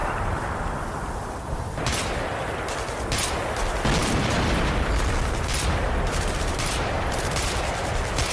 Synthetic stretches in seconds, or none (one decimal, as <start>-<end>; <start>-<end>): 0.0-1.8; 4.0-7.5